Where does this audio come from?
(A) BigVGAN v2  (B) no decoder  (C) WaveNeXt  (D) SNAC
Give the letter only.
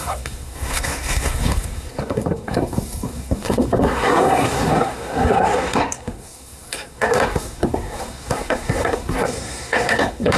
D